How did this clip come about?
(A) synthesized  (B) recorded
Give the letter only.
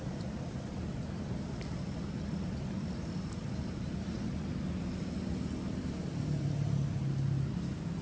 B